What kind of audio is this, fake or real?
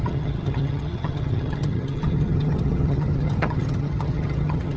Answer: fake